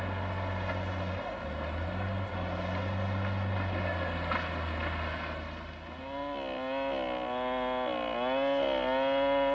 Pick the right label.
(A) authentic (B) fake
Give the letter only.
A